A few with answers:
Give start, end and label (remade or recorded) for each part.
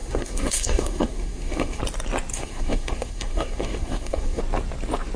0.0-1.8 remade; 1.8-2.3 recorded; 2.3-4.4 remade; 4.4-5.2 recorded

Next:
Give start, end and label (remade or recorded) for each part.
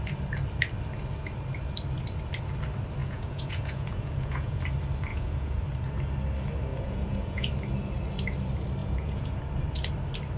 0.0-3.0 recorded; 3.0-4.6 remade; 4.6-5.1 recorded; 5.1-5.6 remade; 5.6-6.7 recorded; 6.7-7.5 remade; 7.5-8.8 recorded; 8.8-9.4 remade; 9.4-10.4 recorded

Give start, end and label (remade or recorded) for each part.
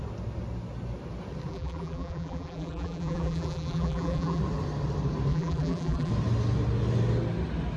0.0-1.5 recorded; 1.5-4.4 remade; 4.4-5.3 recorded; 5.3-6.1 remade; 6.1-7.8 recorded